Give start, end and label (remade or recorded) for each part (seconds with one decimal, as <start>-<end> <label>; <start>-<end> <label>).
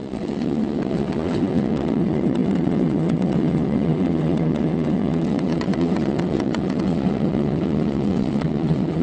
0.0-9.0 remade